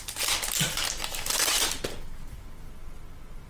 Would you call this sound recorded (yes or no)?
yes